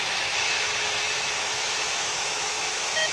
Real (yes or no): no